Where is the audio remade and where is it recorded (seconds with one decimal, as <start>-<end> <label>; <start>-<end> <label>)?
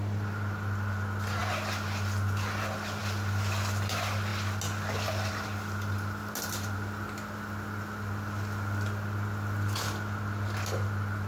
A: 0.0-11.3 recorded